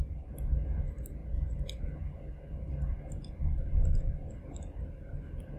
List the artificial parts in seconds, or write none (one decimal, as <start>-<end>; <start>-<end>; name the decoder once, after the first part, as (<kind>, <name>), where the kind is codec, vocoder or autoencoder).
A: none